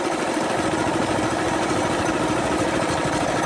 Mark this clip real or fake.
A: fake